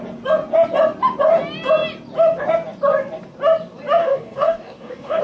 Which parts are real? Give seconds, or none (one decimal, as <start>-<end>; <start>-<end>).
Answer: 0.0-4.0